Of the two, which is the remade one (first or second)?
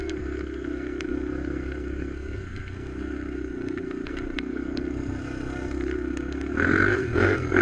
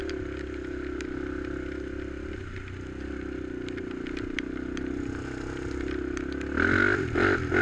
first